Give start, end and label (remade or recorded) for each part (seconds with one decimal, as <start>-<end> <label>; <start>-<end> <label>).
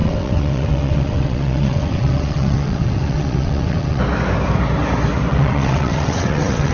0.0-4.0 remade; 4.0-5.3 recorded; 5.3-6.7 remade